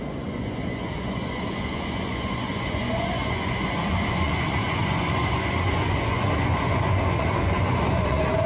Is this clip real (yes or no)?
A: no